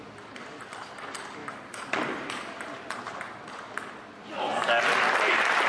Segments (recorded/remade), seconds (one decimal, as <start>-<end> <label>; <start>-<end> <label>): 0.0-1.4 recorded; 1.4-3.3 remade; 3.3-5.7 recorded